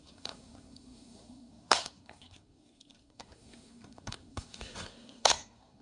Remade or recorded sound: remade